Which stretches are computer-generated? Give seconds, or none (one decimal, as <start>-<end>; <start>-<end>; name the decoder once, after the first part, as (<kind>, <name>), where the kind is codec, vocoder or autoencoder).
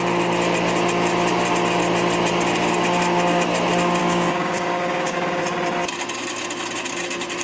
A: 4.0-5.4 (codec, DAC)